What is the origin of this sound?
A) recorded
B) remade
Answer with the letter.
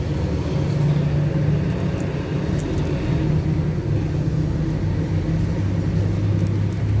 A